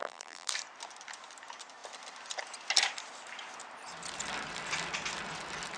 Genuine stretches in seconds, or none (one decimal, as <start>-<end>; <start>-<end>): 0.5-5.8